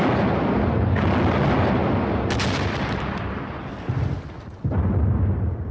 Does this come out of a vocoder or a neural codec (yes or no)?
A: no